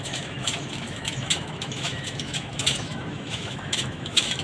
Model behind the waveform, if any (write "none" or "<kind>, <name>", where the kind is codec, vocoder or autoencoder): autoencoder, DAC-VAE